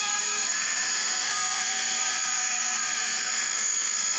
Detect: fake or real fake